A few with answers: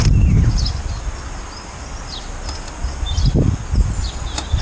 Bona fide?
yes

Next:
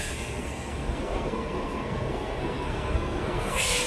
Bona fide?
no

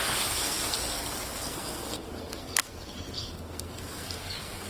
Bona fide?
no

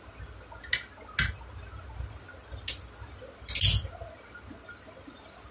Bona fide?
yes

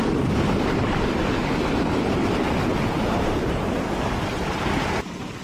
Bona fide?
yes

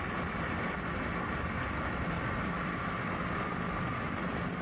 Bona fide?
yes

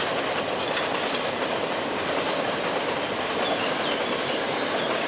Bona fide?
yes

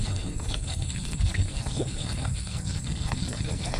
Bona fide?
no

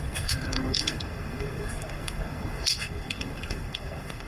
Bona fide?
no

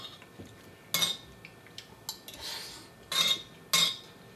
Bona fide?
yes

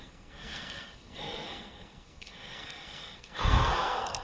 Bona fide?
no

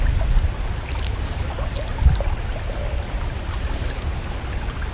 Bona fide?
yes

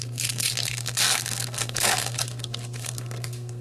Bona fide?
no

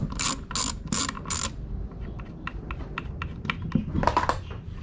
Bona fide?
yes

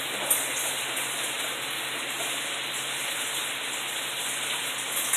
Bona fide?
yes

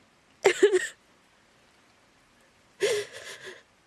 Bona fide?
yes